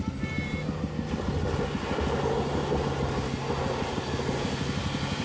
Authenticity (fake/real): real